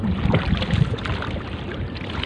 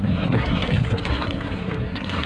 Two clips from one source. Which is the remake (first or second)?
second